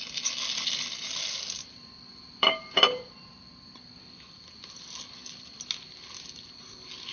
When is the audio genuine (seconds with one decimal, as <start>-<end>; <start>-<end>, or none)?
0.0-2.1; 3.4-7.1